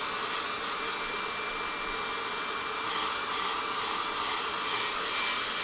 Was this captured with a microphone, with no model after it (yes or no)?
yes